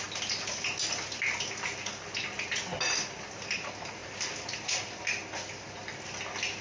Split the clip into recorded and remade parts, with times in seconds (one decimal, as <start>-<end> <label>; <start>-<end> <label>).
0.0-6.6 recorded